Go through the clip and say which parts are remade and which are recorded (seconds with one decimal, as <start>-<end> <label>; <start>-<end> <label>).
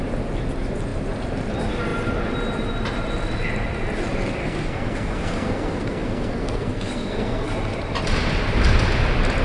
0.0-4.4 recorded; 4.4-7.5 remade; 7.5-9.4 recorded